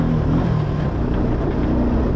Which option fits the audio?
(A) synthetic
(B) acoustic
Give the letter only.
B